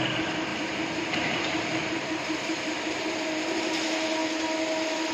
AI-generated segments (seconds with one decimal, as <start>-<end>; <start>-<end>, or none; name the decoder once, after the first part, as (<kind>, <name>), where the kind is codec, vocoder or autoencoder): 0.5-3.6 (vocoder, BigVGAN v2)